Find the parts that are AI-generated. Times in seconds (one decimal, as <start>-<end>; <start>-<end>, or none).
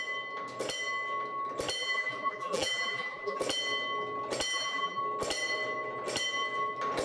1.8-3.4; 4.5-5.0